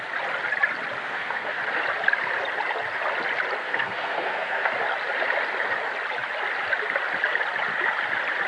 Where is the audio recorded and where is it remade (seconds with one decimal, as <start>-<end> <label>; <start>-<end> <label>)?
0.0-1.0 recorded; 1.0-1.6 remade; 1.6-3.6 recorded; 3.6-4.7 remade; 4.7-8.5 recorded